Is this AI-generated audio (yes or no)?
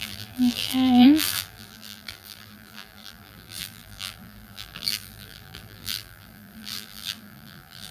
yes